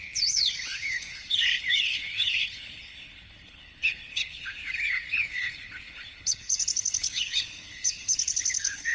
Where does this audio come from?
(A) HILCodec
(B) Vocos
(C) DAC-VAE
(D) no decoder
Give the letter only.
A